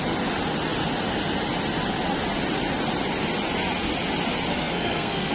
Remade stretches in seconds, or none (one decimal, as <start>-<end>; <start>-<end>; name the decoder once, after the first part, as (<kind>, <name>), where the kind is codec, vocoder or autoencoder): 4.5-5.3 (codec, SNAC)